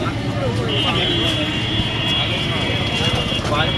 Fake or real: real